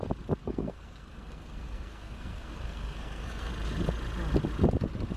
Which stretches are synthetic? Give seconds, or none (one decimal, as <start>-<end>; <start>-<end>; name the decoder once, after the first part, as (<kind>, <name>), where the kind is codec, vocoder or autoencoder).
0.4-3.5 (codec, SNAC)